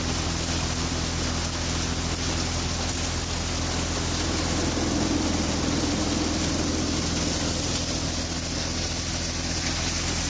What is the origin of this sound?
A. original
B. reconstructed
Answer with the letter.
A